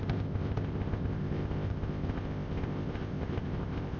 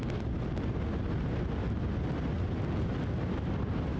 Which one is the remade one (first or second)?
first